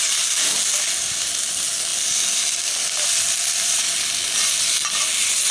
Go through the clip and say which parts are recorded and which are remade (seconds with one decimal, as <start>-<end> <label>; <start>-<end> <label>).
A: 0.0-5.5 recorded